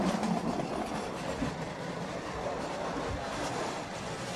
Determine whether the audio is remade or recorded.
recorded